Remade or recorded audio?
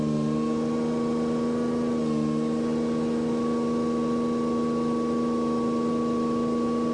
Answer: recorded